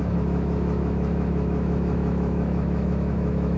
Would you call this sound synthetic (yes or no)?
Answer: yes